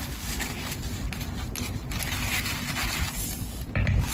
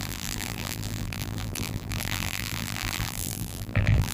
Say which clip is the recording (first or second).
first